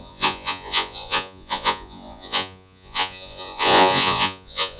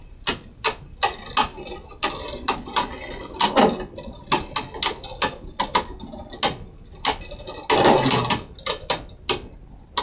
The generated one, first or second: first